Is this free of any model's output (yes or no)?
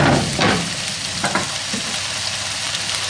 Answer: yes